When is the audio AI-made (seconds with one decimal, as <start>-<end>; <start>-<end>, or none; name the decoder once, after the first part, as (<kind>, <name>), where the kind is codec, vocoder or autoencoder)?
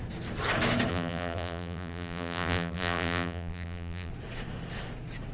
0.9-4.1 (vocoder, BigVGAN v2)